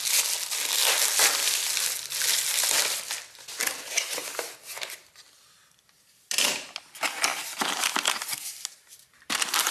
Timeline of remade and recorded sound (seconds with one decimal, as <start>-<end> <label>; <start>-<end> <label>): 0.0-9.7 recorded